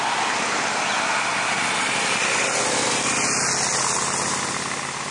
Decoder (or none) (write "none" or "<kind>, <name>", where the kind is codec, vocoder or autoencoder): none